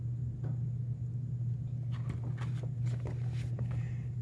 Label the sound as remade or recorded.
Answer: recorded